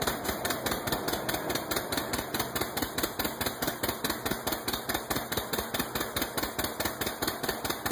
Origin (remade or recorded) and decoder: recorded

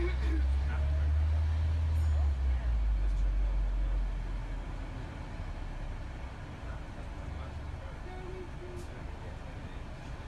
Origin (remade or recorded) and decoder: recorded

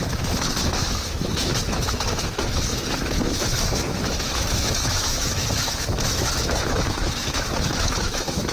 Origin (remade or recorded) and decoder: remade, autoencoder, DAC-VAE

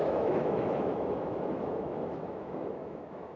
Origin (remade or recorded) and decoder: remade, autoencoder, DAC-VAE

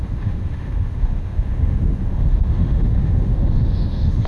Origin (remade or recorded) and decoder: remade, autoencoder, DAC-VAE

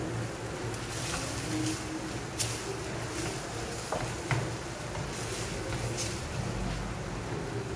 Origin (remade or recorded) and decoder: recorded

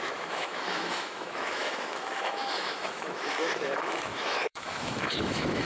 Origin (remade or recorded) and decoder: remade, autoencoder, DAC-VAE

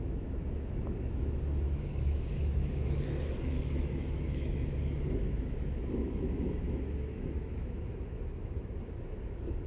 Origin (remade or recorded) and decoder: remade, autoencoder, DAC-VAE